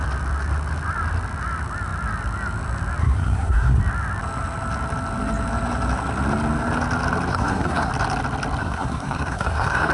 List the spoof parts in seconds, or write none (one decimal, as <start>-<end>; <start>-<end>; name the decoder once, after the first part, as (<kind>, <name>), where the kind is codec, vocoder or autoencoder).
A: 3.0-3.8 (codec, SNAC); 7.3-7.9; 8.6-9.9

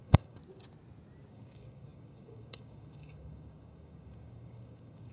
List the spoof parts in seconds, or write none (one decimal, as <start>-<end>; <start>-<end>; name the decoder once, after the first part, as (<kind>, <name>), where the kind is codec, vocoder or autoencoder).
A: 0.0-0.4 (codec, DAC); 1.3-5.1

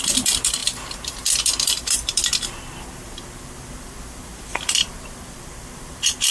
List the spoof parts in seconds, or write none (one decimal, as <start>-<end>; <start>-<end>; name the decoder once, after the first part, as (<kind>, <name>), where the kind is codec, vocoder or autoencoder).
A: 0.0-6.3 (vocoder, BigVGAN v2)

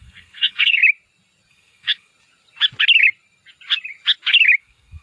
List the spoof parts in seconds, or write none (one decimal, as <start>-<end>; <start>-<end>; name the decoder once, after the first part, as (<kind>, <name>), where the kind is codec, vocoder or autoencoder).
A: 0.0-0.8 (codec, SNAC); 1.5-2.1; 4.6-5.0

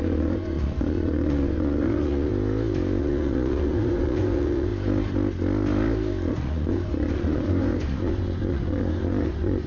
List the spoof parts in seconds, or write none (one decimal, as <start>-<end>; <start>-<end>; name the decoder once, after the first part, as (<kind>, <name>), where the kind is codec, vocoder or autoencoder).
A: 0.0-2.3 (vocoder, Vocos); 3.0-4.7; 6.3-9.7

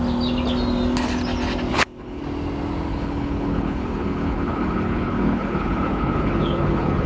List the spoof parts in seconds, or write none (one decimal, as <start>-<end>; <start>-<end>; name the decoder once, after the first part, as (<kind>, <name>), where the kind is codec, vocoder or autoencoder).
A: 1.7-2.2 (codec, HILCodec); 2.9-7.1